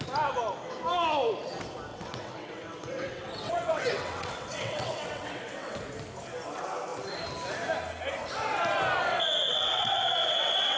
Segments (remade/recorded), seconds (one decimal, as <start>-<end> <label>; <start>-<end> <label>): 0.0-1.9 recorded; 1.9-5.8 remade; 5.8-9.1 recorded; 9.1-10.8 remade